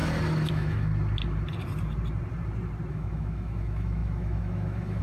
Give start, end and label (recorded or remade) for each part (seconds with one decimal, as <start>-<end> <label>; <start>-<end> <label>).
0.0-0.5 recorded; 0.5-0.9 remade; 0.9-2.9 recorded; 2.9-5.0 remade